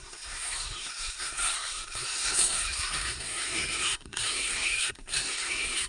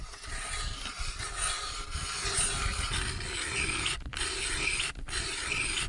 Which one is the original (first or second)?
second